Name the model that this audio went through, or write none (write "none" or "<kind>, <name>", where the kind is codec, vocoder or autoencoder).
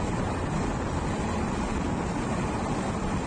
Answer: none